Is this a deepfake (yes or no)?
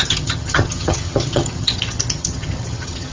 yes